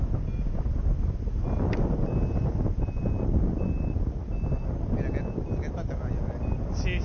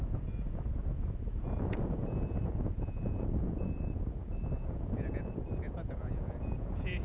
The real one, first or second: first